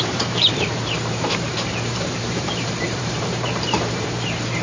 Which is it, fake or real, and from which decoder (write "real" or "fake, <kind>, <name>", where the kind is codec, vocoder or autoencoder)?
fake, vocoder, BigVGAN v2